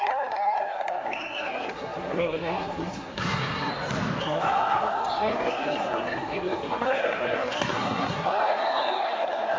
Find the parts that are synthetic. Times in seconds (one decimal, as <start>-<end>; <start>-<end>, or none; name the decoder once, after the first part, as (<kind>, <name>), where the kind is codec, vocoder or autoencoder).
0.0-3.7 (codec, SNAC); 4.2-9.6